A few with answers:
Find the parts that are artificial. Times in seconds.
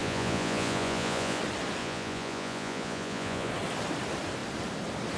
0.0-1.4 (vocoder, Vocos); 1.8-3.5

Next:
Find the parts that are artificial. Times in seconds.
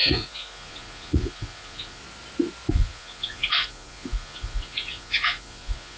0.0-2.0 (vocoder, Vocos); 2.7-6.0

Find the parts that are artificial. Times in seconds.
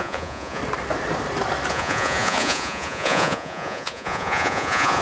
0.0-0.6 (vocoder, Vocos); 1.7-5.0